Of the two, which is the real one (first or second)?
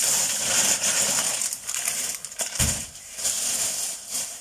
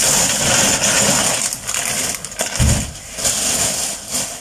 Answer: second